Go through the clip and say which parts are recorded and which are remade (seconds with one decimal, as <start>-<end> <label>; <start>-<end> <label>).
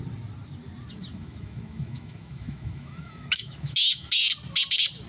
0.0-1.1 recorded; 1.1-4.2 remade; 4.2-5.1 recorded